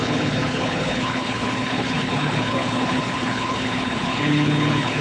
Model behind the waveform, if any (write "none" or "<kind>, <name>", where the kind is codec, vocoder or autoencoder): codec, HILCodec